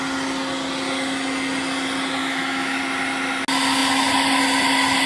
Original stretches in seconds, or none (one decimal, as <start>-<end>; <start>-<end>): 0.0-2.2; 2.8-5.1